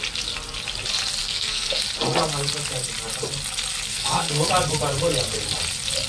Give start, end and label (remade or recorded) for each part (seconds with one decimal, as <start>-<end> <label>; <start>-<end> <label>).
0.0-1.2 recorded; 1.2-1.8 remade; 1.8-3.9 recorded; 3.9-4.5 remade; 4.5-6.1 recorded